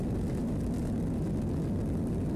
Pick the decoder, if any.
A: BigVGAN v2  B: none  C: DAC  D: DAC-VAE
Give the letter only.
B